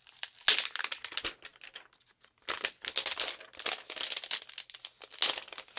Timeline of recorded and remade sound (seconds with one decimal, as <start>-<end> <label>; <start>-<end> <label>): 0.0-5.8 recorded